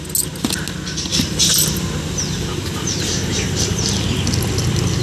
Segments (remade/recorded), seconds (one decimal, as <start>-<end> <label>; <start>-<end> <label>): 0.0-1.1 recorded; 1.1-3.8 remade; 3.8-5.0 recorded